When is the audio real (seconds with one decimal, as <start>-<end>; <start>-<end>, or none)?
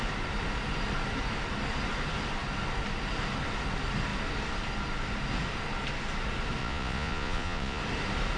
0.0-6.6; 7.8-8.4